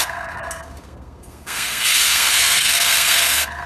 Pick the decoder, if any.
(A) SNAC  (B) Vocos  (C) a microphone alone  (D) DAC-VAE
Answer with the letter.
A